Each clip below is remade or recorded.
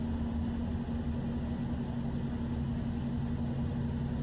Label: recorded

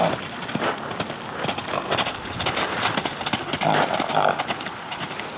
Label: recorded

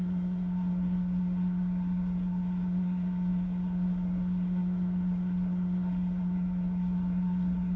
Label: remade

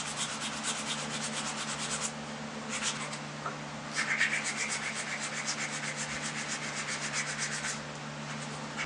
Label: recorded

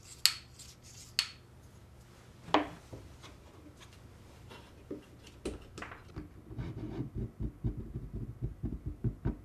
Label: recorded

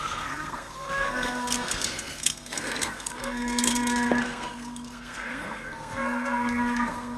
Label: remade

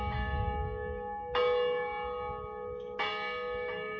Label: recorded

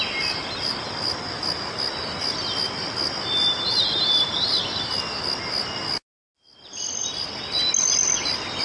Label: recorded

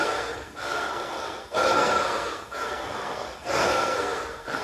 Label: remade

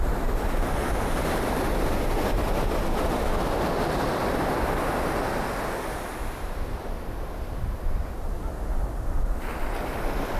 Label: recorded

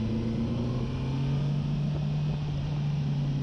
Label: recorded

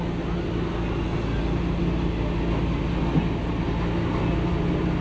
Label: recorded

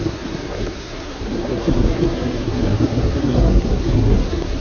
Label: remade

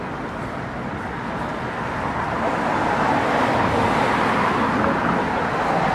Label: recorded